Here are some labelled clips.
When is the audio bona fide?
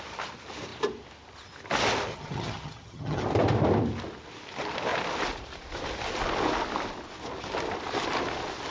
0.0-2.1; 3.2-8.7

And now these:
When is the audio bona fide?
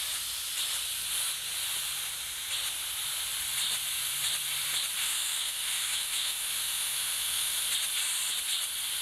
0.0-5.0; 7.7-9.0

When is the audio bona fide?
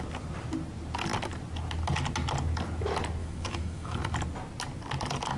0.0-3.2; 4.0-5.4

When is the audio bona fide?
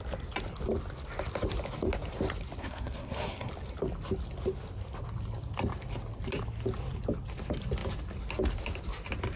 0.0-2.6; 3.5-9.4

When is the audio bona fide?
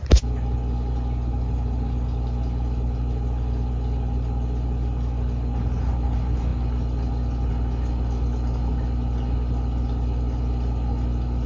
0.0-11.5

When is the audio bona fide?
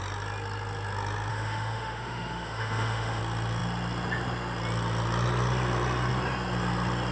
0.0-1.3; 3.2-7.1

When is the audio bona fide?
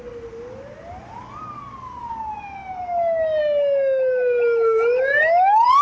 0.0-5.8